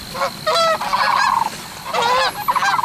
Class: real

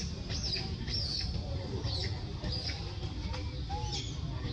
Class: real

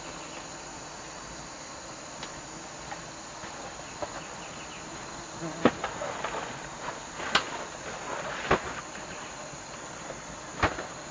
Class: real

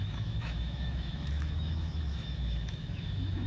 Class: fake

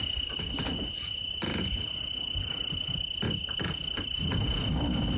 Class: fake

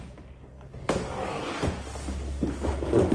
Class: fake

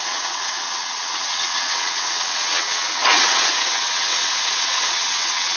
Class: fake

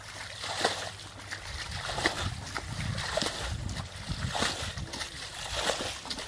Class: real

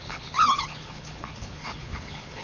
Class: fake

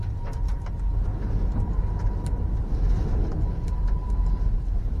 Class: real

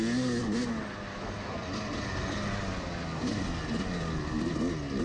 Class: real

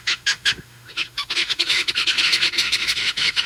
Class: fake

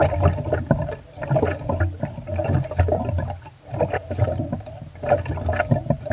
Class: real